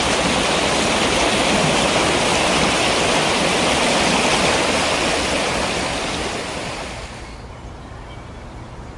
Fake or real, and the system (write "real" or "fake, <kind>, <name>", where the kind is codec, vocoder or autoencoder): real